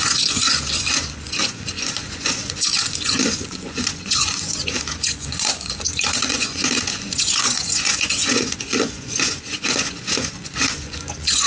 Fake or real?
fake